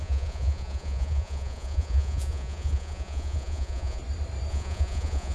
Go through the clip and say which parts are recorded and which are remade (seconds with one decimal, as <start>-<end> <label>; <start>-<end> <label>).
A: 0.0-4.0 remade; 4.0-4.5 recorded; 4.5-5.3 remade